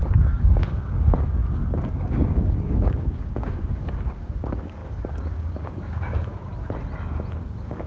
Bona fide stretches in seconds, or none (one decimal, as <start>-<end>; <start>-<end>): 1.4-2.1; 6.5-7.4